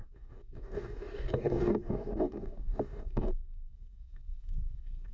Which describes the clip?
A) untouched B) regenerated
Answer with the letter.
B